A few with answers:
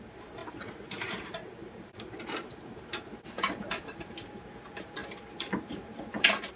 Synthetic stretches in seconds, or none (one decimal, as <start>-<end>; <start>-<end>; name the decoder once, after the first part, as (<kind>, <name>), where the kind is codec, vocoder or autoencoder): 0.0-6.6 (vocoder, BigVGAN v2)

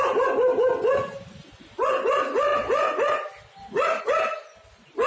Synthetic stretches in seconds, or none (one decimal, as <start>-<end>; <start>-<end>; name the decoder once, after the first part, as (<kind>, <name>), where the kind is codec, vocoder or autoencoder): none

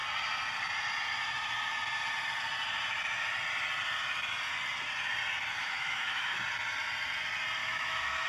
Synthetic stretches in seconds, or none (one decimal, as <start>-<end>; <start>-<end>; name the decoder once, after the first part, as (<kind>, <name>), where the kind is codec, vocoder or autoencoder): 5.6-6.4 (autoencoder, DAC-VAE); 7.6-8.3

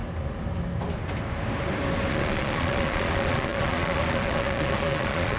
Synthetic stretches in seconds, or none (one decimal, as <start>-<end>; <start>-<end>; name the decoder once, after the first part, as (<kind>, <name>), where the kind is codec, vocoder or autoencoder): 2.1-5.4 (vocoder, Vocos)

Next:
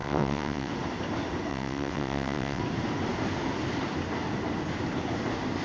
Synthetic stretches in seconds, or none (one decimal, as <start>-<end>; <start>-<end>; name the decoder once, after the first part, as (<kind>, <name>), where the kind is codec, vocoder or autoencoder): 0.0-0.7 (vocoder, WaveNeXt); 1.5-2.6

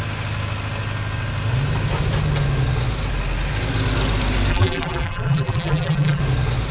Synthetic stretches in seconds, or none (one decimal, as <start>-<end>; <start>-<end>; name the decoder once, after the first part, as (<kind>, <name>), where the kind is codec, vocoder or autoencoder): 4.5-6.2 (vocoder, BigVGAN v2)

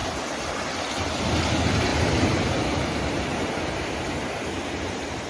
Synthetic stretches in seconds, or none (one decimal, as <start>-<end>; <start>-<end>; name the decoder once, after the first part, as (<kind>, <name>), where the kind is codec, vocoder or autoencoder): 0.0-0.6 (vocoder, BigVGAN v2); 1.9-5.3